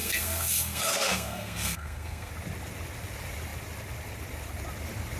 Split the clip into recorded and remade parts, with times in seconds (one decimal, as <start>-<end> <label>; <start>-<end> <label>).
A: 0.0-2.3 remade; 2.3-5.2 recorded